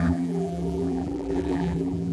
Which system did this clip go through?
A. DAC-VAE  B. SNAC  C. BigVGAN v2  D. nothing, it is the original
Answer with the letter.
C